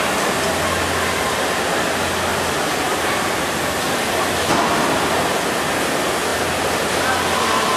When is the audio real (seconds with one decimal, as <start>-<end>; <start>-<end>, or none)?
0.0-2.3; 4.2-6.3; 6.9-7.8